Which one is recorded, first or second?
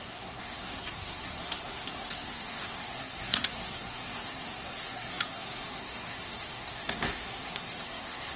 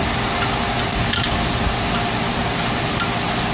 second